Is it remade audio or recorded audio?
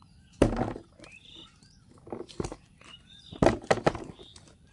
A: recorded